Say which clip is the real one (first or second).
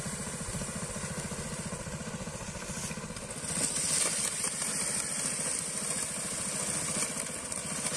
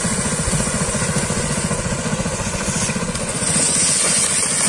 first